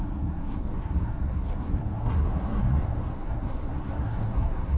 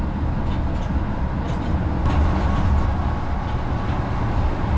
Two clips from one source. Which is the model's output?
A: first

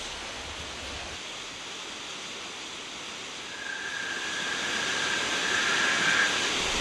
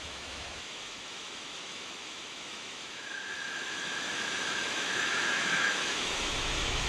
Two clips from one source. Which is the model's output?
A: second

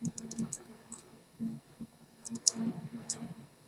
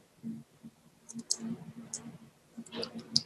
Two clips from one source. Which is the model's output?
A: first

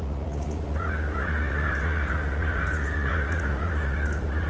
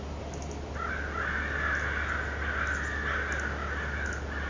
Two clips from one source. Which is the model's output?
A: first